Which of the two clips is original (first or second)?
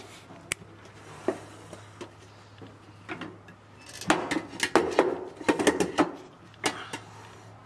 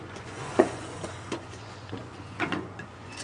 first